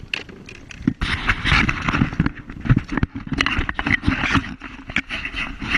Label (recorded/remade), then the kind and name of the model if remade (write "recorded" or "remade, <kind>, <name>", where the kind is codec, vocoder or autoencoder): recorded